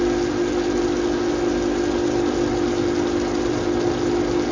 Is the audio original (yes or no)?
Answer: yes